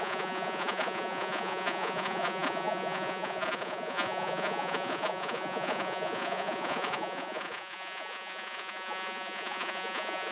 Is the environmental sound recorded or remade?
remade